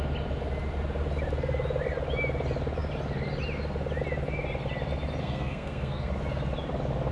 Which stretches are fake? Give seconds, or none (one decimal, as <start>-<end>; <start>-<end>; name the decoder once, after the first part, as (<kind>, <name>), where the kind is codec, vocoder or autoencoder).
5.2-6.1 (codec, SNAC)